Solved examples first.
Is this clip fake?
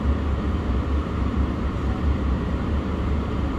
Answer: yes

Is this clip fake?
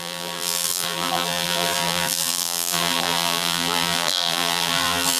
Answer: yes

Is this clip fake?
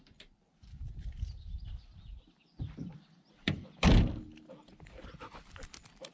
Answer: yes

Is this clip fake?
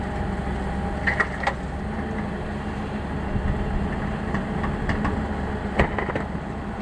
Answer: no